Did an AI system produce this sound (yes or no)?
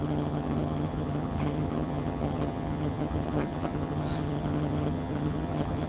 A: yes